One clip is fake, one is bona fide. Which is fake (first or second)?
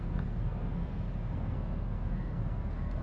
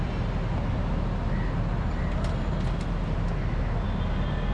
first